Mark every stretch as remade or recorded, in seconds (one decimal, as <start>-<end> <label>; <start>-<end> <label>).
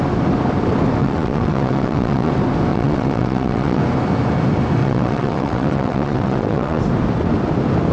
0.0-1.0 recorded; 1.0-2.3 remade; 2.3-2.7 recorded; 2.7-3.8 remade; 3.8-4.8 recorded; 4.8-6.8 remade; 6.8-7.9 recorded